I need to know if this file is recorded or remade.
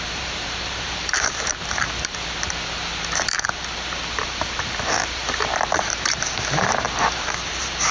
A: remade